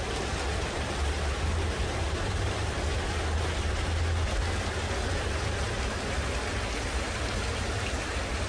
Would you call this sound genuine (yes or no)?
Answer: yes